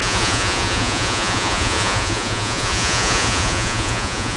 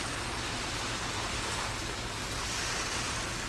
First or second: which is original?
second